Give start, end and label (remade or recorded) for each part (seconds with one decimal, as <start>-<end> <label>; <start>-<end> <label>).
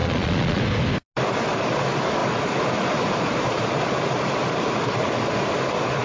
0.0-0.6 remade; 0.6-6.0 recorded